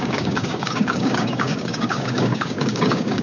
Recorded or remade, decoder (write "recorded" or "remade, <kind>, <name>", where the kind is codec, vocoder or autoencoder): remade, codec, DAC